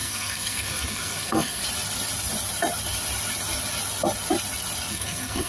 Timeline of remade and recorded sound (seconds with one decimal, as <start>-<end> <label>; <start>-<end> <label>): 0.0-1.6 remade; 1.6-4.9 recorded; 4.9-5.5 remade